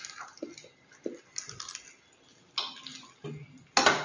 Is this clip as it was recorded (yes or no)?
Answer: yes